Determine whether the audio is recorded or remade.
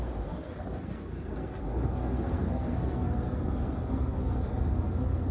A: remade